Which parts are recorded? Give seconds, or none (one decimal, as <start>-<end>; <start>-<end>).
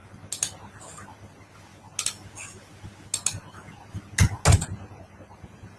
0.0-5.8